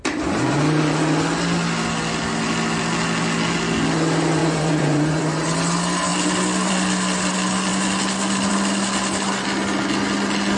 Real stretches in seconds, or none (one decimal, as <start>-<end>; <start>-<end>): 0.0-4.4; 5.2-10.6

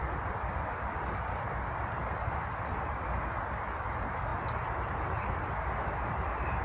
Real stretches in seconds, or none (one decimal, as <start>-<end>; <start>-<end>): 0.0-6.6

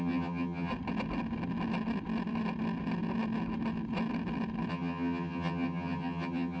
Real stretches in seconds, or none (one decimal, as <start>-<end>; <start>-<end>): 0.7-4.7